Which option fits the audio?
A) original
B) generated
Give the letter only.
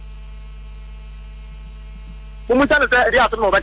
A